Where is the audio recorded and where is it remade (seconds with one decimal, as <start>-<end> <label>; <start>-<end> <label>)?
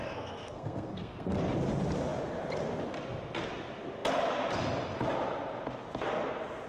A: 0.0-1.4 remade; 1.4-6.7 recorded